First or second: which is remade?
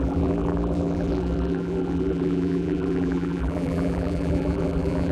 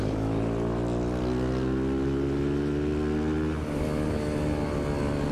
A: first